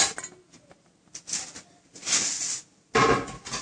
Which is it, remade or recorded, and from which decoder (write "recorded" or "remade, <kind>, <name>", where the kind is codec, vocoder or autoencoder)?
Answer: recorded